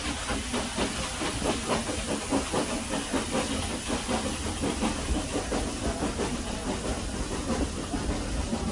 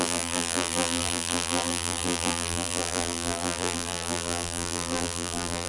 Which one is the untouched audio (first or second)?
first